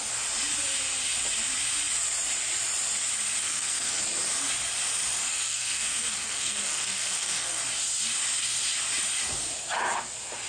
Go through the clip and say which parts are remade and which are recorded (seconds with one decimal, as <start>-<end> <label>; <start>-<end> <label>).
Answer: 0.0-3.4 recorded; 3.4-4.0 remade; 4.0-5.3 recorded; 5.3-7.6 remade; 7.6-10.5 recorded